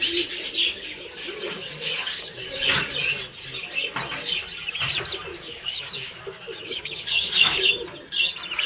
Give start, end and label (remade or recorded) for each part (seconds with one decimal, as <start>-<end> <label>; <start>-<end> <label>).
0.0-0.7 recorded; 0.7-2.8 remade; 2.8-5.3 recorded; 5.3-7.7 remade; 7.7-8.7 recorded